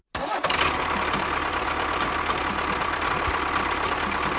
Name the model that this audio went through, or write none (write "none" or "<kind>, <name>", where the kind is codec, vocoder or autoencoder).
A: none